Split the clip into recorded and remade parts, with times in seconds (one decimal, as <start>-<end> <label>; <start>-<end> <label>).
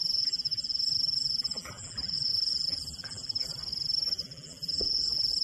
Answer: 0.0-3.5 remade; 3.5-4.1 recorded; 4.1-5.4 remade